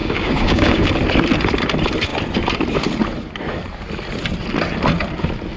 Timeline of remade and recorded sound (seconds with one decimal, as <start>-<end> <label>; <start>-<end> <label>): 0.0-0.9 remade; 0.9-5.6 recorded